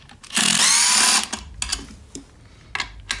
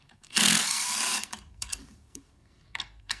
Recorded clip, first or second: first